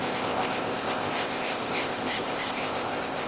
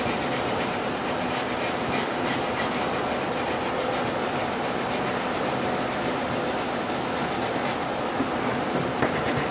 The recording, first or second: second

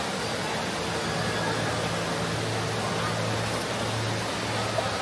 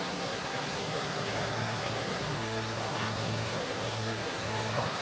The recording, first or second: first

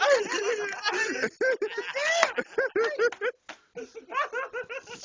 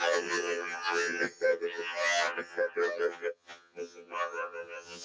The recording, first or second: first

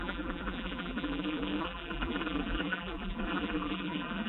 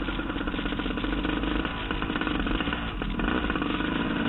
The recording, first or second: second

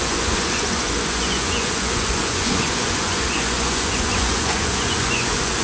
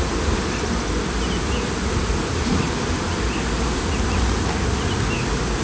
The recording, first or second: second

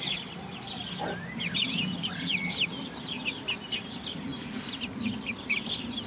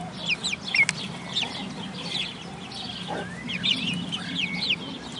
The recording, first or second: second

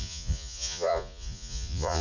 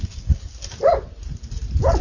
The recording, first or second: second